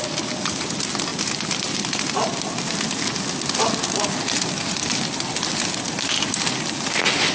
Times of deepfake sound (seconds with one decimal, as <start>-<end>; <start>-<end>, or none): none